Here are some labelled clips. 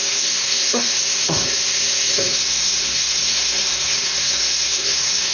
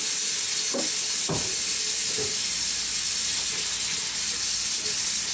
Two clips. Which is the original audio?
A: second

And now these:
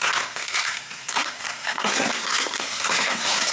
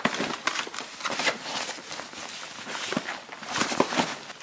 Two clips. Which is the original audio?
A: second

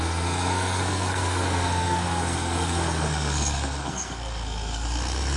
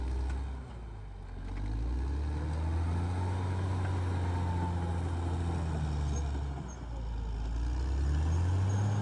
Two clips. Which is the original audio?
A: second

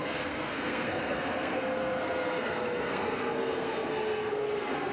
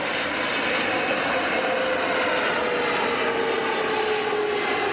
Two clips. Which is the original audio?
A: second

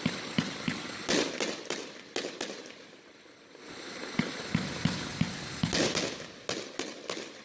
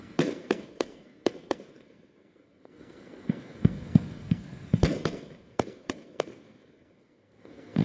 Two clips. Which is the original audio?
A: first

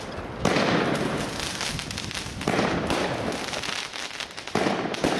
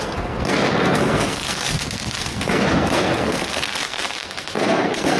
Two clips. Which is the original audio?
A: first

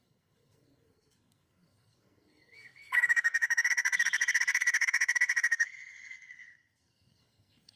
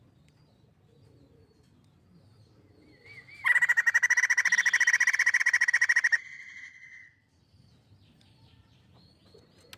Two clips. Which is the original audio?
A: second